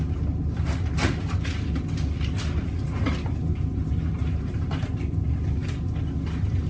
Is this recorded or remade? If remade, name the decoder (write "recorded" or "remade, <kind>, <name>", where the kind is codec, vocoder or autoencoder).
recorded